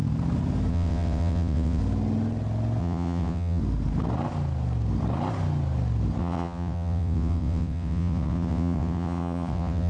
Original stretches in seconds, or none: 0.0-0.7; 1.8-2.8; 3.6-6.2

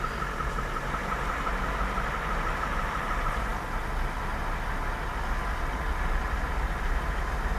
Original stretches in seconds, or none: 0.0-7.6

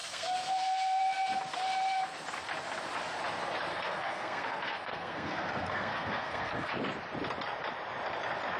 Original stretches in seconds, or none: 1.0-3.7; 6.7-8.6

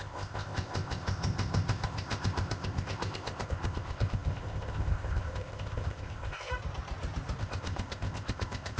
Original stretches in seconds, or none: 6.5-7.4

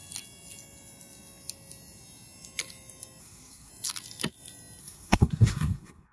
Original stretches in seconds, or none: 0.0-3.2; 3.7-4.8

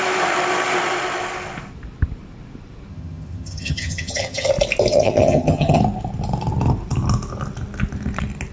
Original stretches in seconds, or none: 0.0-2.9; 4.5-4.9; 5.8-8.5

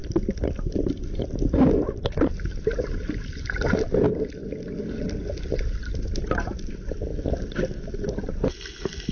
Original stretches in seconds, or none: 0.0-9.1